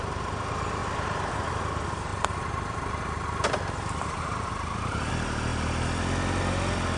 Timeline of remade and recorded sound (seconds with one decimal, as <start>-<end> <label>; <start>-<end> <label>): 0.0-0.8 recorded; 0.8-1.6 remade; 1.6-2.1 recorded; 2.1-5.1 remade; 5.1-7.0 recorded